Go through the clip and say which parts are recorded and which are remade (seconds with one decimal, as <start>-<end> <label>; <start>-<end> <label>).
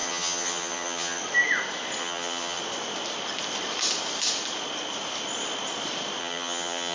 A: 0.0-1.2 remade; 1.2-2.0 recorded; 2.0-2.6 remade; 2.6-6.2 recorded; 6.2-6.9 remade